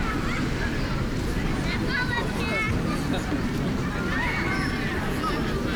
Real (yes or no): yes